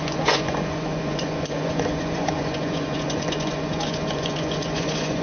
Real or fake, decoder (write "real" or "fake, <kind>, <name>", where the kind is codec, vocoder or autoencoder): fake, vocoder, Vocos